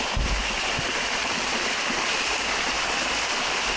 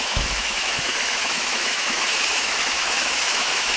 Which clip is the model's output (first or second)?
second